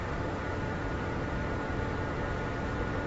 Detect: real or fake real